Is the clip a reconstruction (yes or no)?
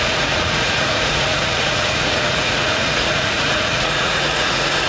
yes